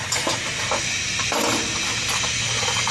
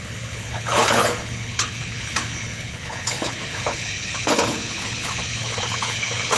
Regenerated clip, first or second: second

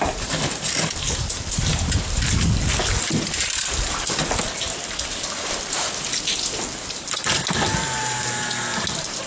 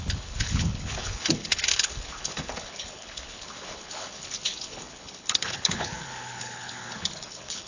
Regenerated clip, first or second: second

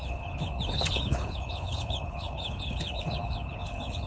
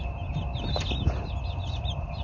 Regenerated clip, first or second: first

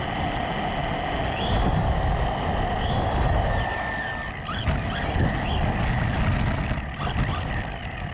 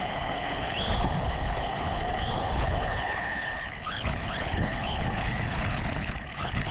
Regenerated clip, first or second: second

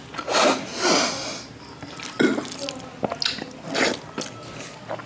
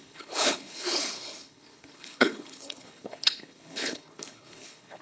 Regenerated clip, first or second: second